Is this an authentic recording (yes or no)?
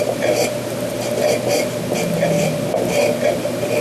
yes